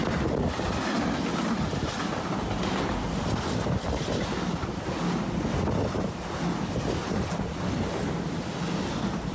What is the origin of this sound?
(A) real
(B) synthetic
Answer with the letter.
A